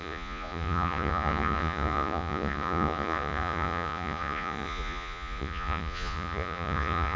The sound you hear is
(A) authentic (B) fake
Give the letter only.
B